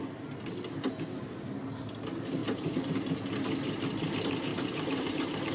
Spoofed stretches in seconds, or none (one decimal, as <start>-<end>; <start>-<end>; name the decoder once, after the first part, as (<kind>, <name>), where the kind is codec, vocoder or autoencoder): 2.4-3.1 (vocoder, BigVGAN v2); 4.5-5.5